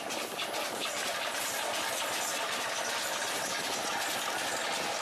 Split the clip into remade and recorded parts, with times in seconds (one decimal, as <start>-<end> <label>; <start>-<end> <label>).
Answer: 0.0-0.8 recorded; 0.8-1.3 remade; 1.3-5.0 recorded